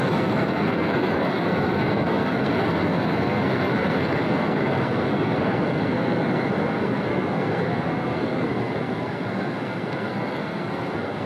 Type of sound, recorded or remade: remade